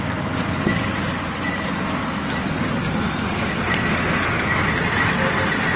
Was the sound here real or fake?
real